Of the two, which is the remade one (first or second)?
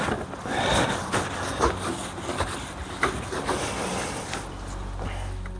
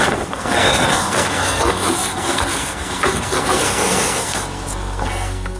second